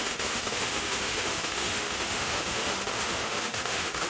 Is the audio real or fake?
fake